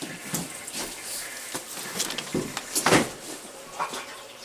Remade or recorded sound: recorded